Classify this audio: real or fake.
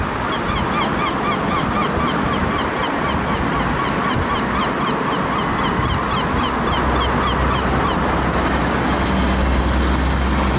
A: real